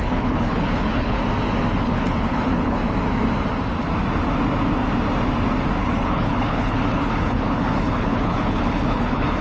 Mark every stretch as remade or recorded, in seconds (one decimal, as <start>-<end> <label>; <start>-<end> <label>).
0.0-1.2 remade; 1.2-1.8 recorded; 1.8-2.8 remade; 2.8-5.8 recorded; 5.8-9.4 remade